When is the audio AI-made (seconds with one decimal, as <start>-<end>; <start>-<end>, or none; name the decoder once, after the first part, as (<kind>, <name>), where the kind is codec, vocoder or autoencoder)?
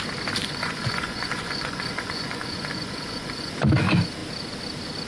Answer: 0.4-3.5 (vocoder, Vocos)